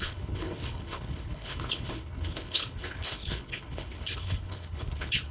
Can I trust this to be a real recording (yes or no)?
no